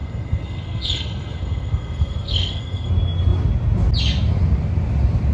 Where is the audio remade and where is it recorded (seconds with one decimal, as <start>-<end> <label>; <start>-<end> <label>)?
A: 0.0-2.9 remade; 2.9-5.3 recorded